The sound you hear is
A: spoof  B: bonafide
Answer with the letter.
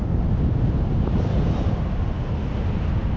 B